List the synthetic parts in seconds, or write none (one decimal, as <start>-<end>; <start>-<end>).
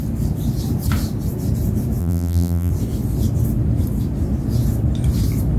2.0-2.7